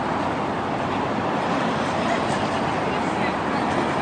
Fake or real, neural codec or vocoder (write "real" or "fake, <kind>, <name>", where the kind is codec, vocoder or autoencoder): real